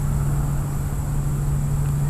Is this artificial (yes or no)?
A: no